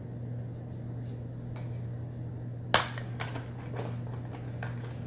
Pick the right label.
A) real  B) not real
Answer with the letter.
A